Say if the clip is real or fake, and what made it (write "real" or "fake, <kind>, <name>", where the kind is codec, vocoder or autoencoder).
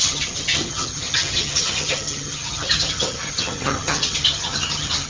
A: fake, vocoder, HiFi-GAN